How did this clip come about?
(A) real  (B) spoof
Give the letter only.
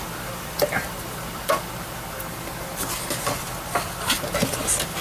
A